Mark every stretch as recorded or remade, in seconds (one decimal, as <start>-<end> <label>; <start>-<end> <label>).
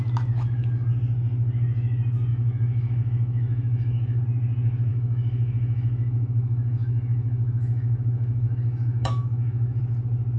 0.0-2.3 recorded; 2.3-4.2 remade; 4.2-4.9 recorded; 4.9-9.8 remade; 9.8-10.4 recorded